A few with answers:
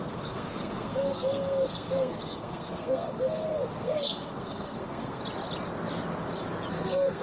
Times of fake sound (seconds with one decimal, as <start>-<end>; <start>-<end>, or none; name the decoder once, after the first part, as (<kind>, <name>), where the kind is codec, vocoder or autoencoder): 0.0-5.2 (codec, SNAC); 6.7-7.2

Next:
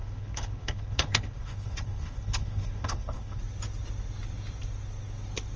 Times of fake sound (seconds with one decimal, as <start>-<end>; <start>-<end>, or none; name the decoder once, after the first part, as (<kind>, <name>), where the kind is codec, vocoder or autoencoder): 0.0-3.4 (codec, HILCodec)

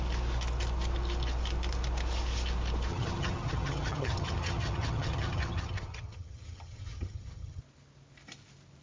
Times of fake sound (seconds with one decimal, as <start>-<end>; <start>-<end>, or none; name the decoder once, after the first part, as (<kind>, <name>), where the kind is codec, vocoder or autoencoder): 2.9-7.6 (vocoder, HiFi-GAN)

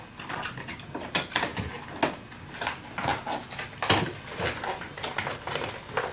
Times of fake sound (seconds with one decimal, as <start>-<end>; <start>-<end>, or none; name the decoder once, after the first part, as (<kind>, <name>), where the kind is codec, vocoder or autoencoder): none

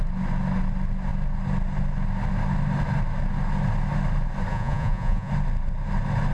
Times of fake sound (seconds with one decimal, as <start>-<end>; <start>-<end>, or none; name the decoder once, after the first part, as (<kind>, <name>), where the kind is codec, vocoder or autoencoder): 4.5-5.3 (vocoder, Vocos)

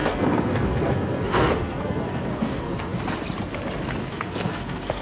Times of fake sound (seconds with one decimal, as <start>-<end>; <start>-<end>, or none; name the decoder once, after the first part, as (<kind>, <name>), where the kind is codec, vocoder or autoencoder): 0.0-3.0 (codec, SNAC); 4.0-5.0